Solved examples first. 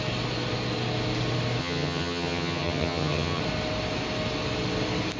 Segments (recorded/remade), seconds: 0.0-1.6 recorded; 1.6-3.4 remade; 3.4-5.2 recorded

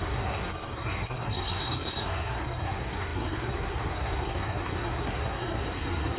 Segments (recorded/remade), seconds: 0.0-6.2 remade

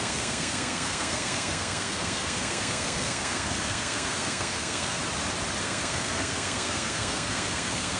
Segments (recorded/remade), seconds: 0.0-5.0 remade; 5.0-5.6 recorded; 5.6-8.0 remade